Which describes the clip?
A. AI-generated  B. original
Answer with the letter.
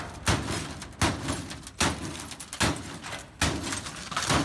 B